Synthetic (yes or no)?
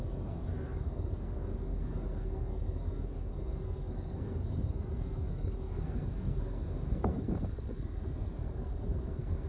yes